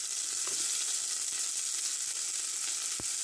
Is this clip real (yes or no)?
yes